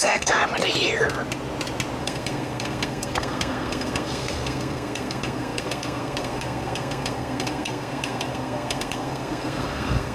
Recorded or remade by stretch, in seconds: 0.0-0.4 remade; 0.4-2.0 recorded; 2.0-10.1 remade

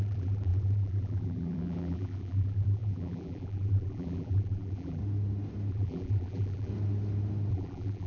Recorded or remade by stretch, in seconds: 0.0-5.0 remade; 5.0-5.7 recorded; 5.7-6.7 remade; 6.7-7.5 recorded; 7.5-8.1 remade